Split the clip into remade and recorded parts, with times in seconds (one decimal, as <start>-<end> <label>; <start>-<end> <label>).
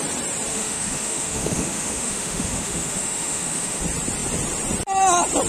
0.0-0.5 recorded; 0.5-3.8 remade; 3.8-5.5 recorded